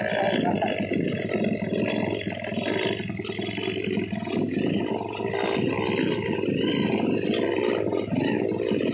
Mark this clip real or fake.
real